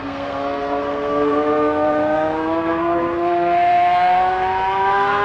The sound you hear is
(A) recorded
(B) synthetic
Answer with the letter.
B